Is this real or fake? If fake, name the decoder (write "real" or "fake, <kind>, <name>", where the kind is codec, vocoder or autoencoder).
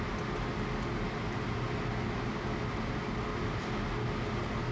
real